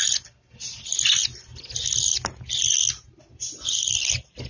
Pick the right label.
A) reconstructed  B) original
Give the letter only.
B